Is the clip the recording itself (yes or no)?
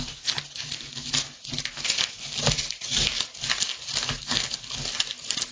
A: yes